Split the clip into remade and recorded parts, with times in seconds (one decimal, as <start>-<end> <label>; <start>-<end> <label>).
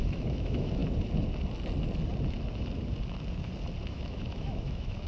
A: 0.0-0.8 remade; 0.8-3.9 recorded; 3.9-5.1 remade